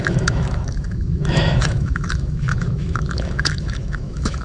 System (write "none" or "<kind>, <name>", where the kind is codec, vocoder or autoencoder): autoencoder, DAC-VAE